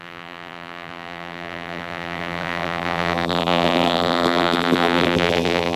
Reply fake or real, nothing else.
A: fake